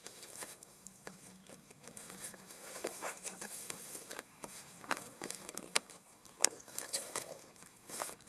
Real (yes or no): no